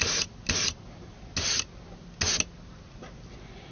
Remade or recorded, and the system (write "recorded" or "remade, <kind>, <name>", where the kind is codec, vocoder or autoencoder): recorded